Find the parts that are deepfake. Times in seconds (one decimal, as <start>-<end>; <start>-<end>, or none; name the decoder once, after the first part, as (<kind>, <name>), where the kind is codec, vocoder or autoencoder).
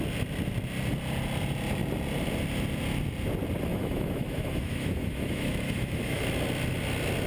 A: 3.7-6.2 (autoencoder, DAC-VAE)